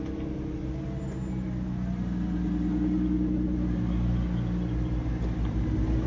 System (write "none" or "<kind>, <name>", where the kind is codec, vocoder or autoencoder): none